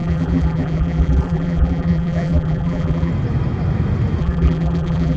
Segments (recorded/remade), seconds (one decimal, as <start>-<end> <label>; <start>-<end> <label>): 0.0-3.1 remade; 3.1-4.2 recorded; 4.2-5.2 remade